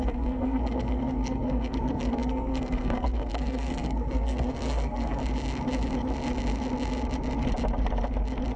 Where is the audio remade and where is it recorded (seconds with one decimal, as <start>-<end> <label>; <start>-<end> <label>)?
0.0-5.2 remade; 5.2-8.6 recorded